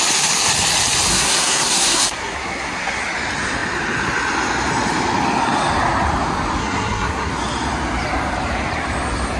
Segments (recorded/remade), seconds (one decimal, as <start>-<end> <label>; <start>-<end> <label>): 0.0-1.1 recorded; 1.1-3.0 remade; 3.0-6.6 recorded; 6.6-7.3 remade; 7.3-9.4 recorded